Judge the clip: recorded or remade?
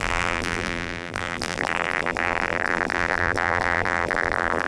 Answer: remade